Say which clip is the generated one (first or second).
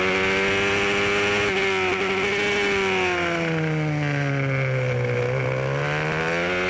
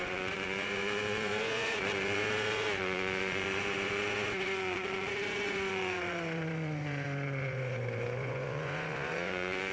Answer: second